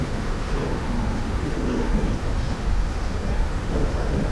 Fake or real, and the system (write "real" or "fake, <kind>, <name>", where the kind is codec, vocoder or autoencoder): fake, autoencoder, DAC-VAE